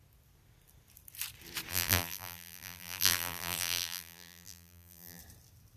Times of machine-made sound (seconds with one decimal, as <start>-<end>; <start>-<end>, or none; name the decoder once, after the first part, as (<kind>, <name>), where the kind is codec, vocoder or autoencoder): 1.7-5.2 (vocoder, BigVGAN v2)